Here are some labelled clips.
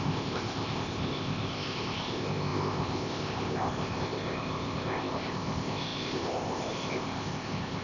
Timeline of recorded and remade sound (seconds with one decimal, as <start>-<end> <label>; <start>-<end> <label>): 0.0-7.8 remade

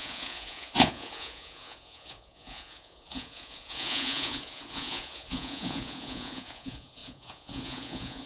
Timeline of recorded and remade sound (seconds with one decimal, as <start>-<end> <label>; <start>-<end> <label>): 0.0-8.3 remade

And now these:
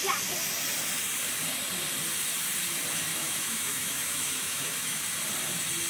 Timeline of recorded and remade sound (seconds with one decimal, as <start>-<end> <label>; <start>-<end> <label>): 0.0-3.1 recorded; 3.1-5.0 remade; 5.0-5.9 recorded